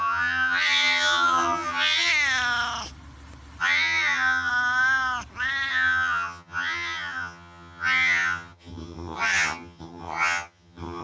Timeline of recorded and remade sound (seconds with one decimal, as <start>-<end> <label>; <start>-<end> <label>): 0.0-2.1 remade; 2.1-3.6 recorded; 3.6-4.5 remade; 4.5-5.7 recorded; 5.7-11.0 remade